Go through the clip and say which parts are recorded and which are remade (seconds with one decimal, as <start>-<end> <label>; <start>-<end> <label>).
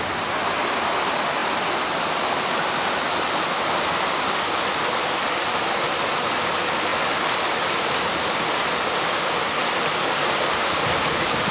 0.0-11.5 recorded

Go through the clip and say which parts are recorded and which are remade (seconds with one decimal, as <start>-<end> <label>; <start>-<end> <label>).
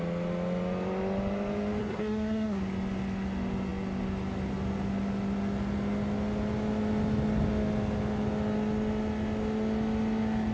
0.0-1.8 recorded; 1.8-2.6 remade; 2.6-10.5 recorded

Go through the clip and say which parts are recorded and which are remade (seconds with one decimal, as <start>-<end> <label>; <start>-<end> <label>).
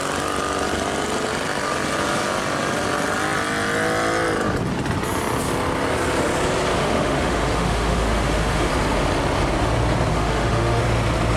0.0-6.8 recorded; 6.8-8.7 remade; 8.7-10.1 recorded; 10.1-10.8 remade; 10.8-11.4 recorded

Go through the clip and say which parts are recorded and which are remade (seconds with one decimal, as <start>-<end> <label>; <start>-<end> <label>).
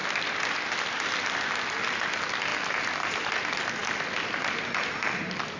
0.0-5.6 recorded